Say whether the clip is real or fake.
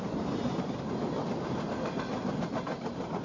real